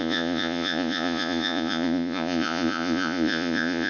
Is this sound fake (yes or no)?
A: yes